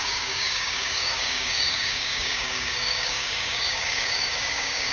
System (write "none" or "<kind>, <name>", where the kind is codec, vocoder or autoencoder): codec, DAC